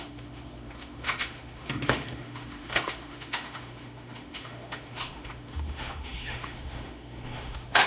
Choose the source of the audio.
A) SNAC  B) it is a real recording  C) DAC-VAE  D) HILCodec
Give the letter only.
C